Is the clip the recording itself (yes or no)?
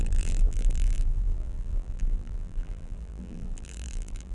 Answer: no